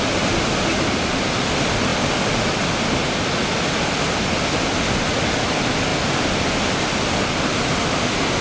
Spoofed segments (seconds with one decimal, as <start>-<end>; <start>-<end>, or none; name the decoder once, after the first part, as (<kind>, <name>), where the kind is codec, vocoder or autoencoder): none